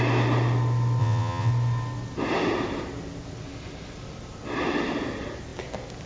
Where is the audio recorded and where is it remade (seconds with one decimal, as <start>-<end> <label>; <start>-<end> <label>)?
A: 0.0-1.0 recorded; 1.0-1.5 remade; 1.5-6.1 recorded